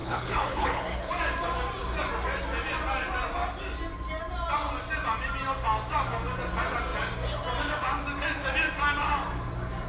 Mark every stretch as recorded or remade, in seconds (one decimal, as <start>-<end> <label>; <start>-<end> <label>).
0.0-1.1 remade; 1.1-9.9 recorded